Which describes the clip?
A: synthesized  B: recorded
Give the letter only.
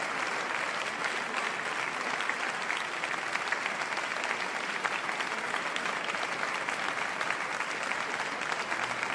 B